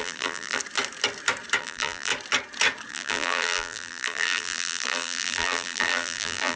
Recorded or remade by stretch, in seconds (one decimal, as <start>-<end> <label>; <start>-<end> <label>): 0.0-0.6 remade; 0.6-1.6 recorded; 1.6-2.1 remade; 2.1-2.9 recorded; 2.9-6.6 remade